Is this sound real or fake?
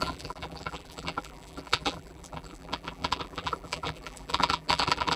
fake